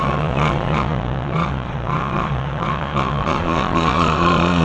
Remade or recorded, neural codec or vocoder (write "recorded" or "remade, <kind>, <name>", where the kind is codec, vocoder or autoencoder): remade, vocoder, Vocos